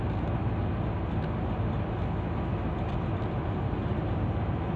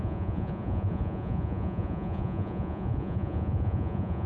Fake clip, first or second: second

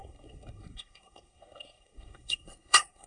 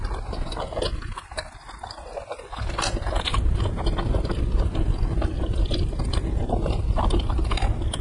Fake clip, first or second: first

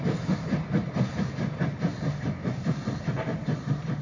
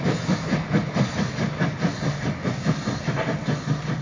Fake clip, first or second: first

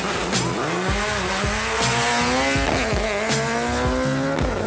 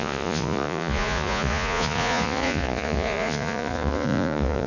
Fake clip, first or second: second